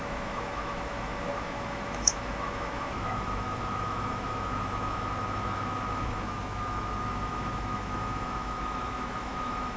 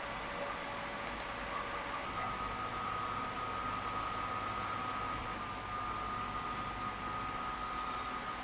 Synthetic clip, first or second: first